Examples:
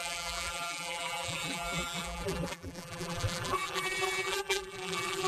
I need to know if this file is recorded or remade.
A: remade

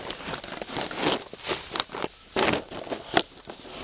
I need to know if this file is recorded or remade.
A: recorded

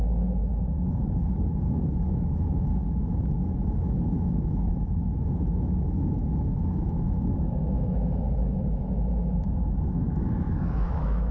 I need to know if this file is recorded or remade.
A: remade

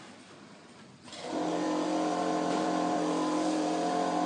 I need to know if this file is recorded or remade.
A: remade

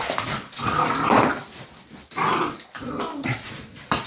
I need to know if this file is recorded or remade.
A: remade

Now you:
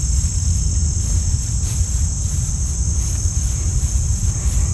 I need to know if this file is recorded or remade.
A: recorded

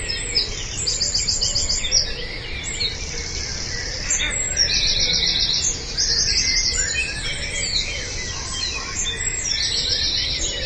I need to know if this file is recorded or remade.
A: recorded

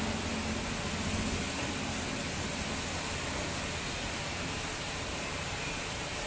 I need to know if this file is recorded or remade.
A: recorded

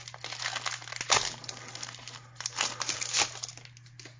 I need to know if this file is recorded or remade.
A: recorded